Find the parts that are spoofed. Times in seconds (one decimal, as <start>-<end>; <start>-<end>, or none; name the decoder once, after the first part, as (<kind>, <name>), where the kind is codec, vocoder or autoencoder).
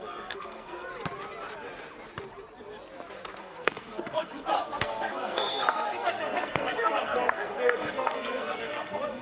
0.0-0.9 (codec, SNAC); 3.4-9.2